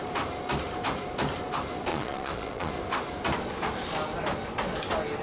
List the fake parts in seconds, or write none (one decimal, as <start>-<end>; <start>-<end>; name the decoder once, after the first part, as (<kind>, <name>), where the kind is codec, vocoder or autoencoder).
1.9-2.7 (vocoder, Vocos)